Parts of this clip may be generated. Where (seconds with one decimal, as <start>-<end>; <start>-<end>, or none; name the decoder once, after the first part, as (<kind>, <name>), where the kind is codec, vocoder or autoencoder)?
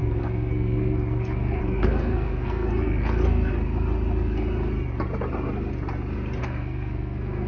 0.0-3.5 (codec, SNAC); 6.4-7.5